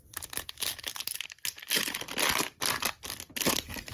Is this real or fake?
real